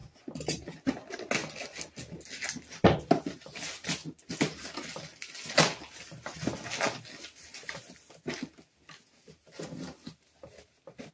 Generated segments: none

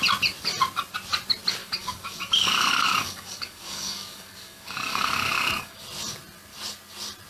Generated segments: 1.6-5.8 (codec, DAC)